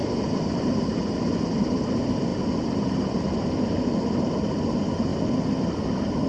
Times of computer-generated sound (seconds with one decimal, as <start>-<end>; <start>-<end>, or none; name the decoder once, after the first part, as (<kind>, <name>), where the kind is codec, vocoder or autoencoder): 0.0-0.8 (vocoder, BigVGAN v2); 2.3-3.8